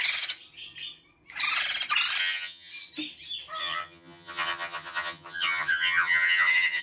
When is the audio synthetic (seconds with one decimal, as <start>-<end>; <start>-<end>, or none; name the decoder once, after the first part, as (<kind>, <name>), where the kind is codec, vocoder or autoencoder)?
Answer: 2.2-2.7 (vocoder, HiFi-GAN); 3.6-6.8